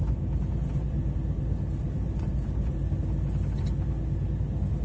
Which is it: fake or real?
real